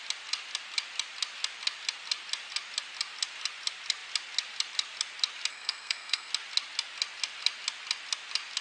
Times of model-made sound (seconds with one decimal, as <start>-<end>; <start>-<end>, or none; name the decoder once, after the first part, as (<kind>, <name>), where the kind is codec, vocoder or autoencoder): 5.5-6.3 (codec, SNAC)